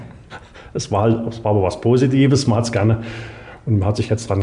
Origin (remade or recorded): recorded